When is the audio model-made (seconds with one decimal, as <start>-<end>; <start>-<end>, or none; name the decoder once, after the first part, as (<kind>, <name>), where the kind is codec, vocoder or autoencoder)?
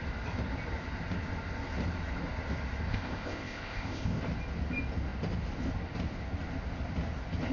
2.9-4.2 (codec, ZipCodec)